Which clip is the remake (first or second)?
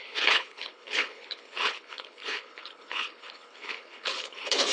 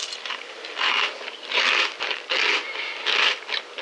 first